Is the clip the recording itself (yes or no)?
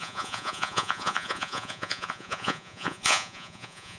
no